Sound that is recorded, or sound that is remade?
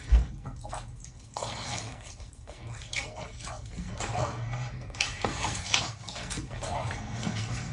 remade